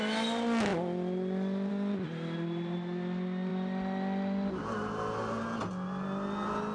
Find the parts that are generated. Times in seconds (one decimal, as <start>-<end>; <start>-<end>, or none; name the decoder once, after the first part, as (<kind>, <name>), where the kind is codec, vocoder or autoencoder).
none